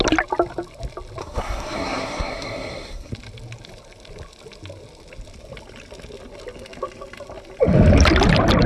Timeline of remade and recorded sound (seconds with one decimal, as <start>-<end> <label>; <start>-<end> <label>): 0.0-1.2 recorded; 1.2-3.1 remade; 3.1-8.7 recorded